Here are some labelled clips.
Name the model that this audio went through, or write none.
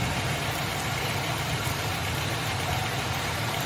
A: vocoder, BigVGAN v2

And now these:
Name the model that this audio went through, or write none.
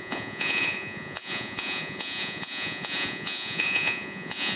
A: vocoder, Vocos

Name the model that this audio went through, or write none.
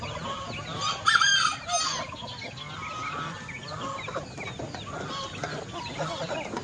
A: none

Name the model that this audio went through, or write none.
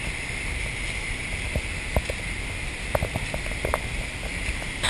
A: none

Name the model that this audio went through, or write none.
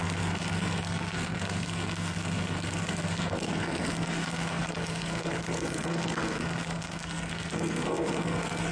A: codec, SNAC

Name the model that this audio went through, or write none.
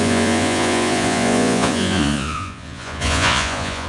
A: vocoder, Vocos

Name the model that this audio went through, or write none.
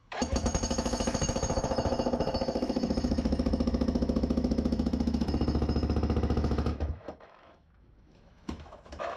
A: autoencoder, DAC-VAE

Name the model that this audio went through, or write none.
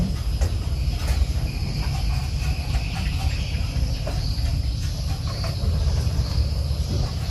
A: vocoder, BigVGAN v2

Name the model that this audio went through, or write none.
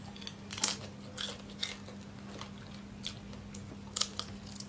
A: none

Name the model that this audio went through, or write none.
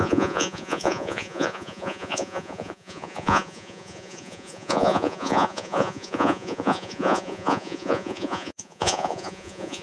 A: vocoder, Vocos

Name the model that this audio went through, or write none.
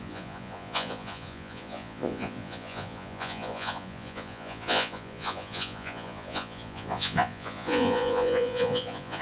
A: vocoder, Vocos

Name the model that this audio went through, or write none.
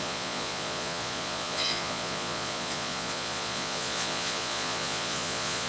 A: vocoder, Vocos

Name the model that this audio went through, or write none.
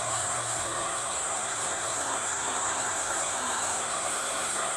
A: codec, SNAC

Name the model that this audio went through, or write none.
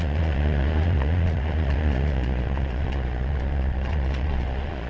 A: vocoder, Vocos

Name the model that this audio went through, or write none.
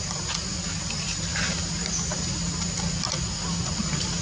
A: vocoder, BigVGAN v2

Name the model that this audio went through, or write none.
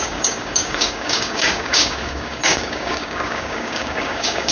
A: codec, DAC